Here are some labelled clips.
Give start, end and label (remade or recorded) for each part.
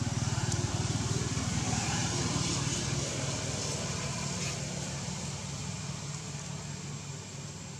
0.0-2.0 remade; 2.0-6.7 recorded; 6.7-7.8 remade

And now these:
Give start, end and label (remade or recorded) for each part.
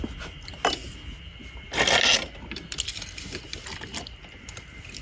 0.0-5.0 recorded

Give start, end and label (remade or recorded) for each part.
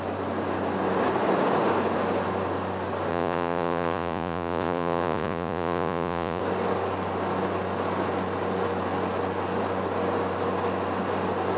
0.0-3.1 recorded; 3.1-6.4 remade; 6.4-11.6 recorded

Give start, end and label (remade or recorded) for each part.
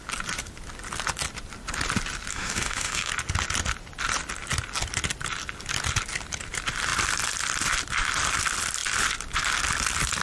0.0-2.3 recorded; 2.3-3.1 remade; 3.1-10.2 recorded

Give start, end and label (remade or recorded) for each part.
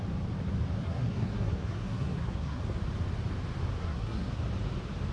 0.0-0.8 recorded; 0.8-2.6 remade; 2.6-3.8 recorded; 3.8-4.4 remade; 4.4-5.1 recorded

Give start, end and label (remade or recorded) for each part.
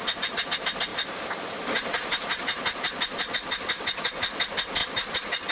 0.0-0.9 recorded; 0.9-3.3 remade; 3.3-5.5 recorded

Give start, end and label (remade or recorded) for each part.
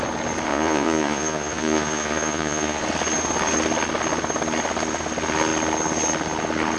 0.0-0.5 recorded; 0.5-2.8 remade; 2.8-6.8 recorded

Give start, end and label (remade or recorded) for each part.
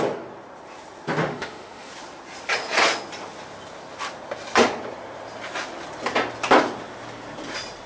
0.0-1.2 recorded; 1.2-1.9 remade; 1.9-7.9 recorded